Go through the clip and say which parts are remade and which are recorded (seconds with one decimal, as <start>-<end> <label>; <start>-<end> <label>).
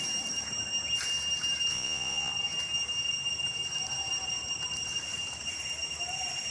0.0-1.7 recorded; 1.7-2.3 remade; 2.3-6.5 recorded